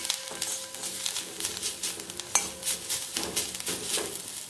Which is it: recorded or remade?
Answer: recorded